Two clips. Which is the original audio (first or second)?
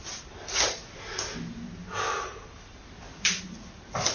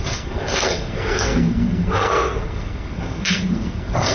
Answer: first